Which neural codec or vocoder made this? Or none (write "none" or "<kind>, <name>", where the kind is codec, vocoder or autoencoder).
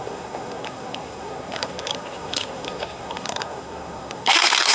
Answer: codec, SNAC